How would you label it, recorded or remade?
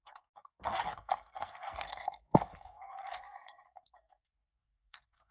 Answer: remade